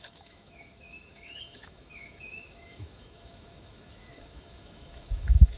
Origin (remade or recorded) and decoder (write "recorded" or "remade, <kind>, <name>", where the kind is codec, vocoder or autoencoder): remade, autoencoder, DAC-VAE